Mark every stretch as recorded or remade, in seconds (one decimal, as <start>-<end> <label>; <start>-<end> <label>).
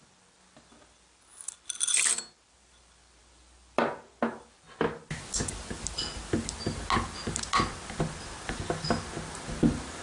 0.0-10.0 recorded